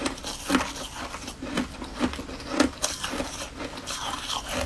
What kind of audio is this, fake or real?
real